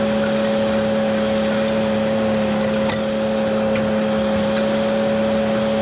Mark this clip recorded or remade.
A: recorded